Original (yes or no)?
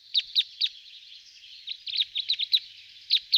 yes